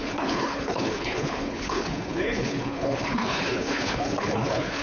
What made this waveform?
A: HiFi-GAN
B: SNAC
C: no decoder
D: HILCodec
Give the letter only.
D